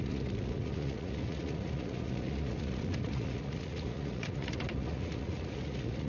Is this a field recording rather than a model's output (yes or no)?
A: no